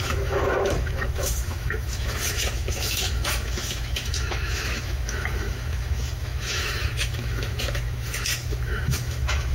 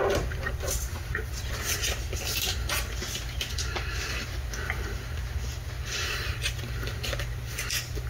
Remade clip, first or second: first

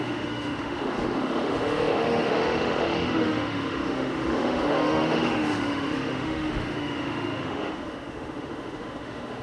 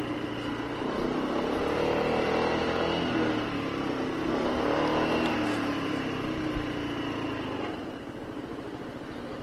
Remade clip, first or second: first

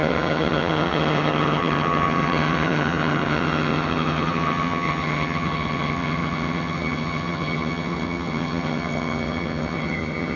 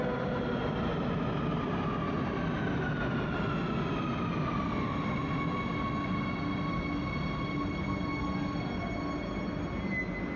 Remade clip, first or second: first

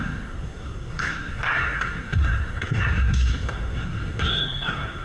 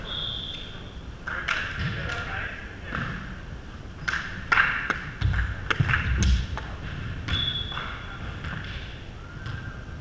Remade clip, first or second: first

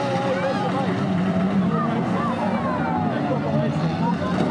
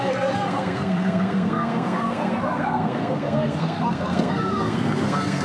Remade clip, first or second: second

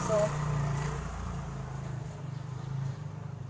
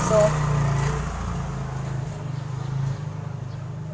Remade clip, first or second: first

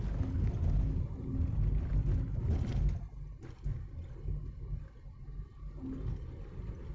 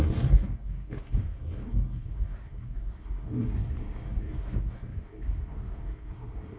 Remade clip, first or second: second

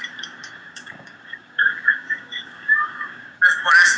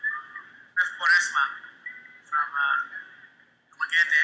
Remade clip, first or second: first